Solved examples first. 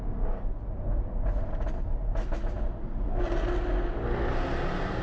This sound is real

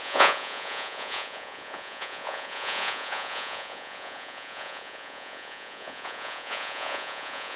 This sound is fake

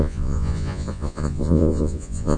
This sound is fake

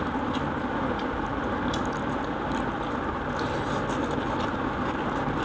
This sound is real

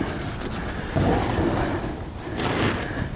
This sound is real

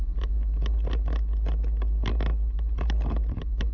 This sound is real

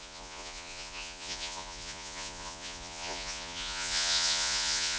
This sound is fake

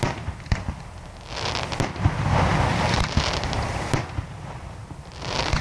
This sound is real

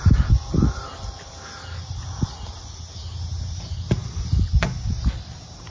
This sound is real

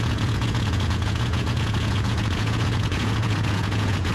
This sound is fake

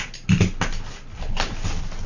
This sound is real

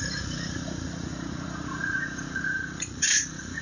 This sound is fake